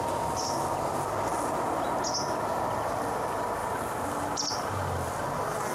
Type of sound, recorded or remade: recorded